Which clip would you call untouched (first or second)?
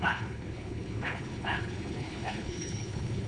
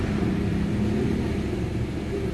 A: second